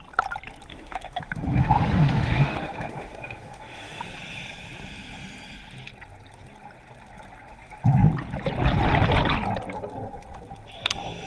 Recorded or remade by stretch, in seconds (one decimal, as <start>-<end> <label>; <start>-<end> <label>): 0.0-0.7 recorded; 0.7-4.0 remade; 4.0-11.3 recorded